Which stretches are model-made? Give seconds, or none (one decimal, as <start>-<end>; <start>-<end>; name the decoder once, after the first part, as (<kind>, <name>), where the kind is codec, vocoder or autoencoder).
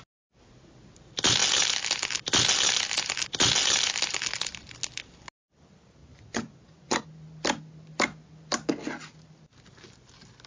6.0-7.0 (vocoder, Vocos)